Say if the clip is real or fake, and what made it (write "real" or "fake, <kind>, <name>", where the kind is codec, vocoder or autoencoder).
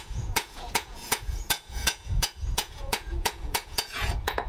fake, vocoder, Vocos